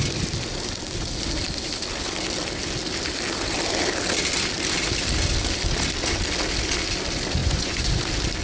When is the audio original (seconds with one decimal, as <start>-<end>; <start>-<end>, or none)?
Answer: 0.0-7.4; 8.0-8.4